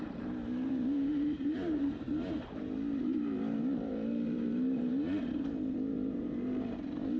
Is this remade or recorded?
remade